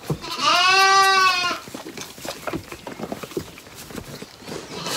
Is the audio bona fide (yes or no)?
yes